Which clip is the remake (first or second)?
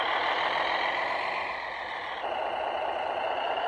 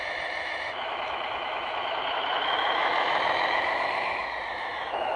second